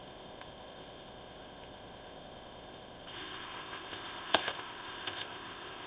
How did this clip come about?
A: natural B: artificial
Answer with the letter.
B